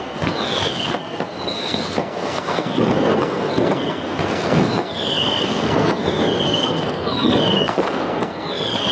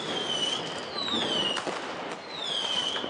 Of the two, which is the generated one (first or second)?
first